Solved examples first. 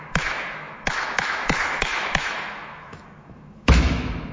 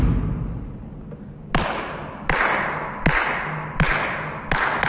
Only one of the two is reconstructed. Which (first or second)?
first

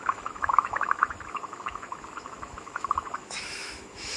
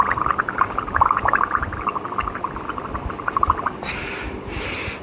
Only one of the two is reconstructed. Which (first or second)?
first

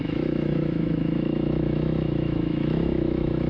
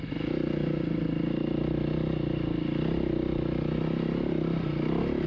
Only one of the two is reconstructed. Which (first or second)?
first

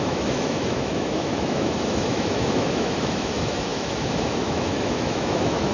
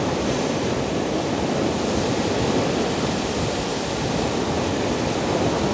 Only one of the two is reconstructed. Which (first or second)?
first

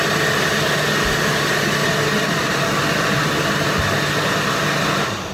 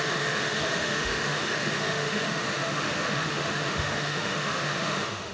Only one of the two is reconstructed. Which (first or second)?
second